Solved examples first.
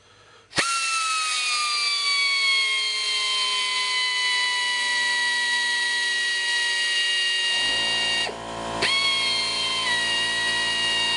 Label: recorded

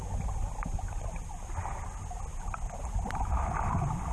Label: recorded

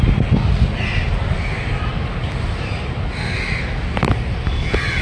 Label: recorded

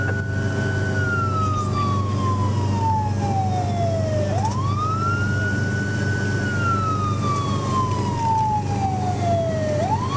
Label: recorded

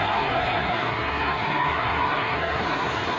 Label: remade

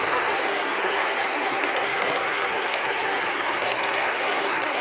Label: remade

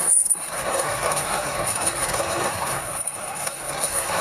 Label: remade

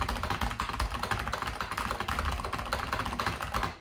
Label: recorded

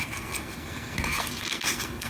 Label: remade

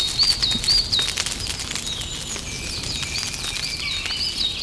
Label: recorded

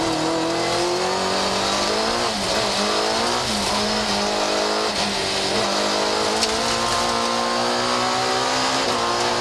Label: recorded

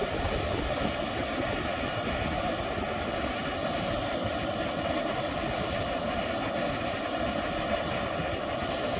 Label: recorded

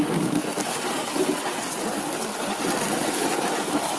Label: recorded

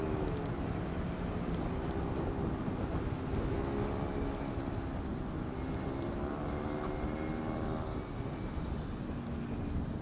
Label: recorded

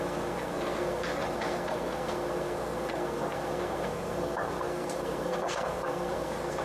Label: remade